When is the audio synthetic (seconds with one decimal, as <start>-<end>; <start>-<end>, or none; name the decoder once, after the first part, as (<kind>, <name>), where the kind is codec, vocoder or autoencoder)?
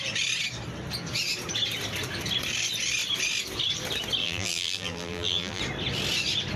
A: 4.2-5.6 (vocoder, BigVGAN v2)